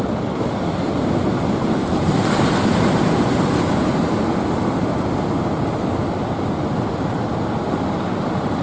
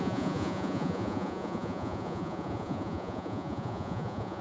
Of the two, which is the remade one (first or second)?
second